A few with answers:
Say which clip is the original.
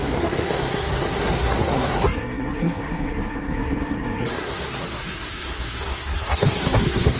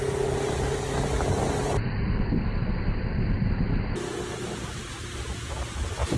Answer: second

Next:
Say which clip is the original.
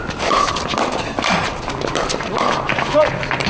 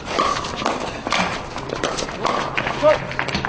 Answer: second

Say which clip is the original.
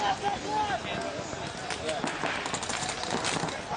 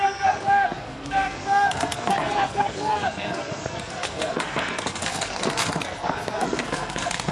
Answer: first